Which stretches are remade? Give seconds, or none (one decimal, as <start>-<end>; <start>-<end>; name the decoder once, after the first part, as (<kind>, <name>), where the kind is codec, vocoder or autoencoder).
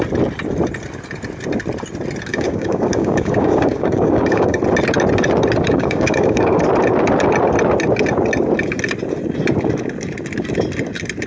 2.3-4.6 (codec, DAC); 5.7-6.6